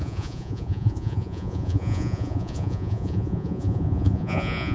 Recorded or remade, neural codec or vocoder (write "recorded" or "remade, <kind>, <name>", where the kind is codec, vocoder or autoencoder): remade, vocoder, Vocos